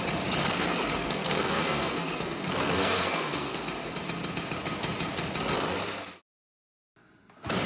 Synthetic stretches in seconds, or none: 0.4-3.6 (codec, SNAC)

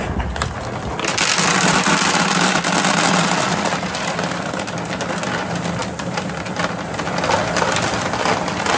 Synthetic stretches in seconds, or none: none

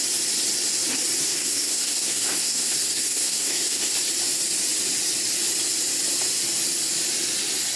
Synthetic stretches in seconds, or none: 1.2-3.9 (codec, SNAC)